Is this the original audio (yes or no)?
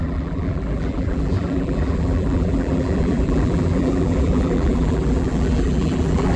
no